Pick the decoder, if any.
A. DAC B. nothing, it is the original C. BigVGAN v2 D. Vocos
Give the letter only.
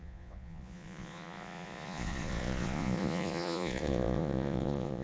D